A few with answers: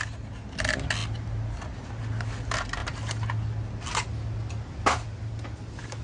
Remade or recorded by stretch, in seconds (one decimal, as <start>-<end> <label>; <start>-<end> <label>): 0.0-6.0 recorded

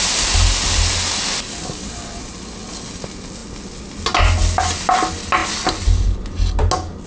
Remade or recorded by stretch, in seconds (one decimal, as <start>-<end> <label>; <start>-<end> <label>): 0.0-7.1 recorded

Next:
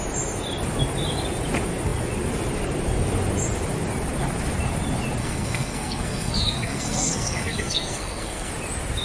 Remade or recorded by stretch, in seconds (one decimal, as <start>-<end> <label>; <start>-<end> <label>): 0.0-5.2 recorded; 5.2-8.5 remade; 8.5-9.0 recorded

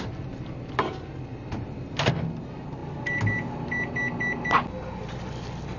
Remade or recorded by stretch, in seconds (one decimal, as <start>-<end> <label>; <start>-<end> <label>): 0.0-5.8 recorded

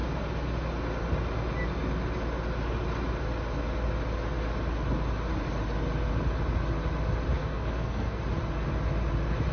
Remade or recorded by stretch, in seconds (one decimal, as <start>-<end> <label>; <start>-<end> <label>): 0.0-7.4 recorded; 7.4-8.2 remade; 8.2-9.5 recorded

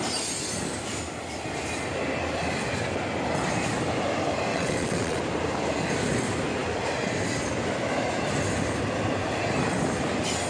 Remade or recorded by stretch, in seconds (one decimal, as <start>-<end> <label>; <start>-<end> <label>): 0.0-4.5 recorded; 4.5-5.2 remade; 5.2-10.5 recorded